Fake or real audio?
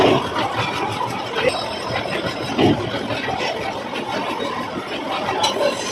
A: real